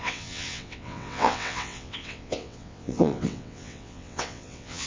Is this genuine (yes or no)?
no